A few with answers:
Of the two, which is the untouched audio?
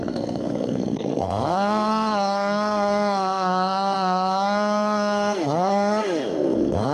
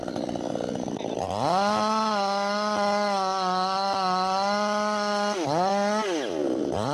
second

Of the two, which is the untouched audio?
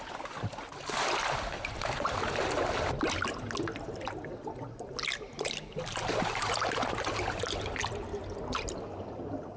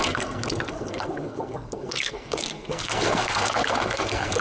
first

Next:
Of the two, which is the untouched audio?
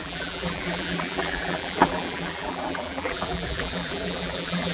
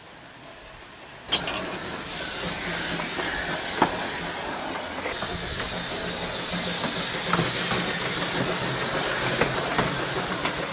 second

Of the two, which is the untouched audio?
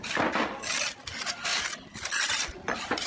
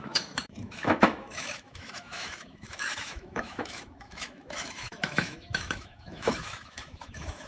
first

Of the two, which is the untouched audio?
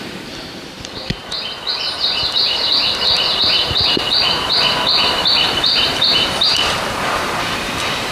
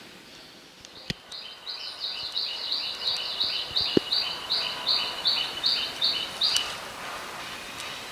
second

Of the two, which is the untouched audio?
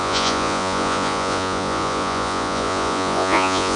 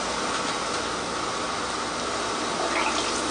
second